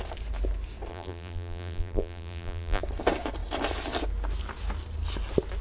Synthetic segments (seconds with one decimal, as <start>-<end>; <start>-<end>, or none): 0.9-2.8